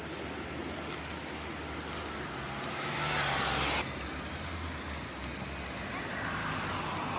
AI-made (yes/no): no